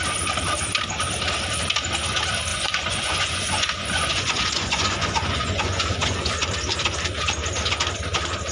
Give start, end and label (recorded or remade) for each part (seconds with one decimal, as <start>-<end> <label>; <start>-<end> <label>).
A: 0.0-2.5 recorded; 2.5-6.3 remade; 6.3-8.5 recorded